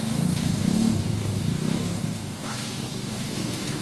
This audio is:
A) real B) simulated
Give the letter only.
B